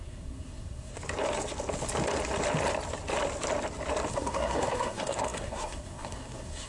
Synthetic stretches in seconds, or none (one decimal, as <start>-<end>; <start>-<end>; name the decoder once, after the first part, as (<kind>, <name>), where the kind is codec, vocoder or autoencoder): 0.0-0.9 (codec, SNAC); 4.1-6.7